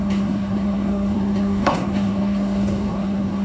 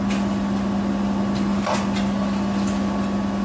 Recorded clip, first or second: second